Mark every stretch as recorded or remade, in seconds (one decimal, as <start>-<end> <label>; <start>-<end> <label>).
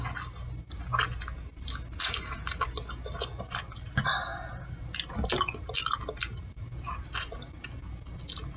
0.0-8.6 recorded